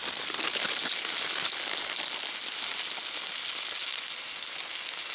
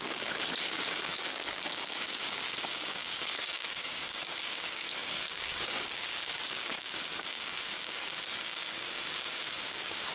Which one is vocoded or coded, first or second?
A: second